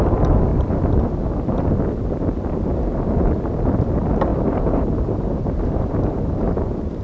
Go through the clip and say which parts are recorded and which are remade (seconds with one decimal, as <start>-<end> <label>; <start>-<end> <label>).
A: 0.0-0.5 recorded; 0.5-1.2 remade; 1.2-4.3 recorded; 4.3-6.5 remade; 6.5-7.0 recorded